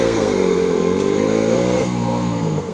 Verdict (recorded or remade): remade